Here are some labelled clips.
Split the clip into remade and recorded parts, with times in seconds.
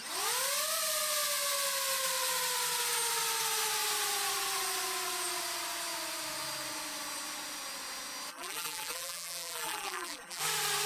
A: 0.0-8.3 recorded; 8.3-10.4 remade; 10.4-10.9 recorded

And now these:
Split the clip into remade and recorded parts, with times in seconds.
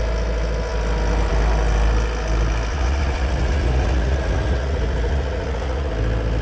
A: 0.0-2.7 recorded; 2.7-5.9 remade; 5.9-6.4 recorded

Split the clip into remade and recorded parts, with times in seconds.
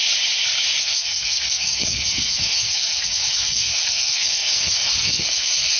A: 0.0-0.8 recorded; 0.8-5.8 remade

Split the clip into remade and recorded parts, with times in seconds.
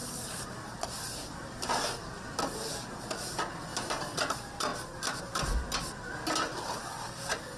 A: 0.0-2.7 remade; 2.7-7.6 recorded